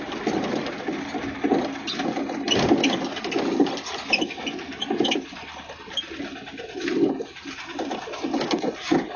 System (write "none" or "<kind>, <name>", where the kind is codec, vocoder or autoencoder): none